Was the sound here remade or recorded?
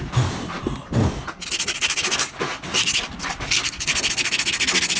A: recorded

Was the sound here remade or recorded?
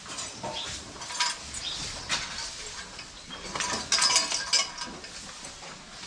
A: recorded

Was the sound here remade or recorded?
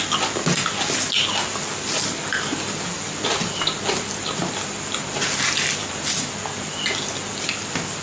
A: recorded